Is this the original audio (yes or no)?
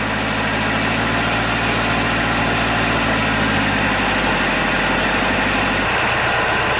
yes